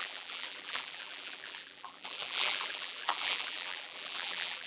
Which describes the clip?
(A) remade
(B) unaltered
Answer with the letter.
A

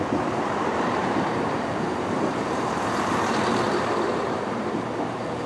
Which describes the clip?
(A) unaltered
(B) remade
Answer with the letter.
B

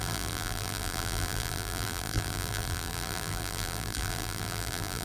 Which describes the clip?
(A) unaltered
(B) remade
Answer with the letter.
B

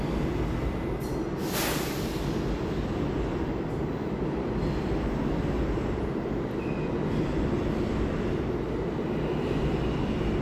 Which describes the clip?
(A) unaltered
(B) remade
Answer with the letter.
A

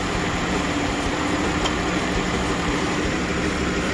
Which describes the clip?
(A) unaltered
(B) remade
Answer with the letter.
B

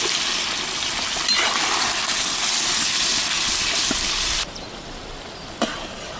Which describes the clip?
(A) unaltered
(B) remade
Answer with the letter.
A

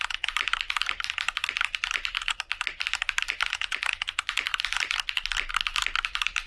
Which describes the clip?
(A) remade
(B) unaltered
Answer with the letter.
A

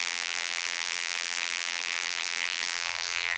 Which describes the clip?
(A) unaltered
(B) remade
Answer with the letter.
B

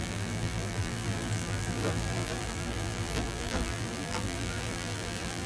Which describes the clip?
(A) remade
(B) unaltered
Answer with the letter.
A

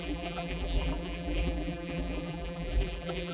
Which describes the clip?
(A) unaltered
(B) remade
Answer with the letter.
B